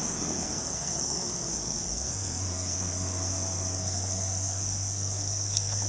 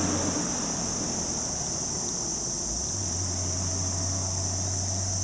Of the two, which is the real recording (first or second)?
second